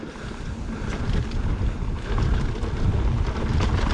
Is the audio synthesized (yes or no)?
no